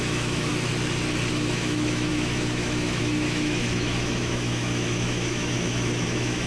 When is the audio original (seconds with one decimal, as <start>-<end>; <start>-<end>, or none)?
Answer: 0.5-1.3